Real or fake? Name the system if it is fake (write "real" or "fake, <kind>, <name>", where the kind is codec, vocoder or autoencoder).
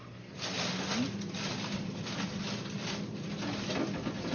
real